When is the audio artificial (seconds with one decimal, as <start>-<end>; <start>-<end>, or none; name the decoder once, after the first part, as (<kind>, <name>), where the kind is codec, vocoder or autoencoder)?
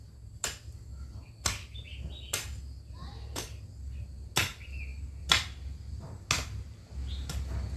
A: none